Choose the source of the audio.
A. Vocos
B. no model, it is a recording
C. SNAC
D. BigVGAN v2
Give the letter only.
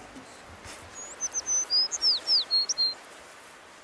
B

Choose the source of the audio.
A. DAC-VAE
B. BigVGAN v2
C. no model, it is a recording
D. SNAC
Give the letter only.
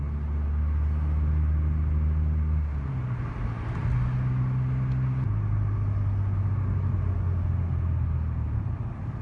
C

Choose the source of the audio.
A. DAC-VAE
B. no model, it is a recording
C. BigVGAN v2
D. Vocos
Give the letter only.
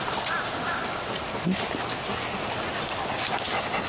B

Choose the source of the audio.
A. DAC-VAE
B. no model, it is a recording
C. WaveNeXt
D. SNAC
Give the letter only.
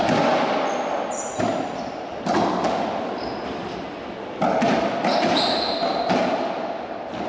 B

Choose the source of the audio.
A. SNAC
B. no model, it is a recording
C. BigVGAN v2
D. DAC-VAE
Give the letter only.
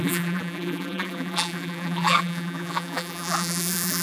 C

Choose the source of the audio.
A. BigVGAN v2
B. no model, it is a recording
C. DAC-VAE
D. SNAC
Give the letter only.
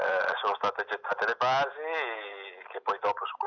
B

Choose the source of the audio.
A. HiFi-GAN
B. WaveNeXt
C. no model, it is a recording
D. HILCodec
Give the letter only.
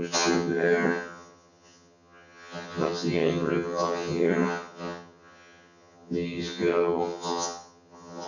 A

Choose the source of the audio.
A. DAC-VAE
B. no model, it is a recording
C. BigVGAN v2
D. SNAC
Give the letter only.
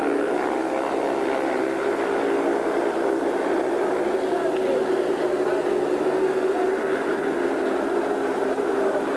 B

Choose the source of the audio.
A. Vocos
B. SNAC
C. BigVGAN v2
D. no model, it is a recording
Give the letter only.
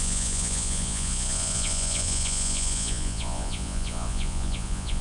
A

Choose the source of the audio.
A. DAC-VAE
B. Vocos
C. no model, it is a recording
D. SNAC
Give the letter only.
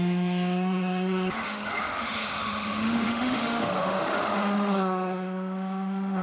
A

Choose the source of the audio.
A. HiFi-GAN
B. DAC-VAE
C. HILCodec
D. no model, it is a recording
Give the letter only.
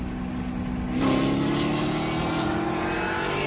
D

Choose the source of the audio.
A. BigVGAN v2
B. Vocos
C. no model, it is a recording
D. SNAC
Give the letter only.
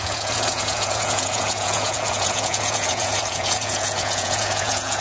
B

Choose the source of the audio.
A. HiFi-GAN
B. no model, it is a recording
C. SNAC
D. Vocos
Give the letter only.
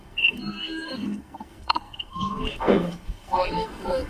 C